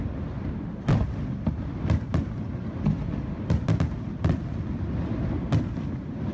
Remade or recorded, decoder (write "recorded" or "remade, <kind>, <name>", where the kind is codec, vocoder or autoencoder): recorded